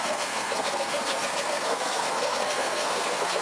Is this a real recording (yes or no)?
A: no